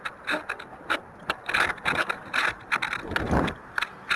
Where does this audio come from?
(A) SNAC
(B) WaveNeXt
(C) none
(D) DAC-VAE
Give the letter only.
C